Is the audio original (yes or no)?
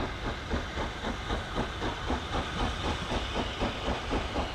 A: yes